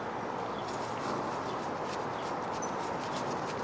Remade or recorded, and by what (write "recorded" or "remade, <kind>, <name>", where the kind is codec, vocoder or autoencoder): recorded